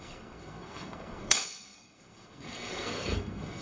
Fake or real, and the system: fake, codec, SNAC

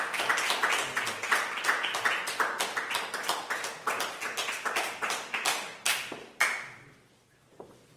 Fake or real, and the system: real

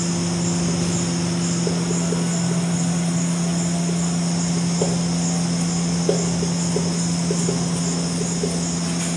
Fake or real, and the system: real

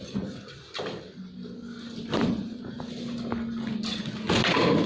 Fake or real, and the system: real